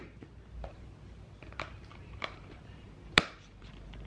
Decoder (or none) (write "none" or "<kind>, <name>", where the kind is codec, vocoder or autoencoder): vocoder, BigVGAN v2